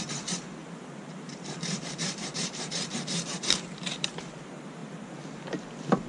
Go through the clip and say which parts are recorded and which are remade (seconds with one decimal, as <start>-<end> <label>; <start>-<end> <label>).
0.0-0.6 recorded; 0.6-4.3 remade; 4.3-6.1 recorded